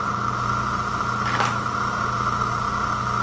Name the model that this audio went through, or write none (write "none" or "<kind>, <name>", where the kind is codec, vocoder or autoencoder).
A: none